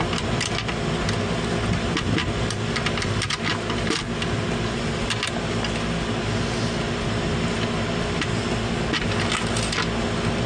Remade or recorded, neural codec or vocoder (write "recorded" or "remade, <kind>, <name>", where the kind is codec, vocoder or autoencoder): recorded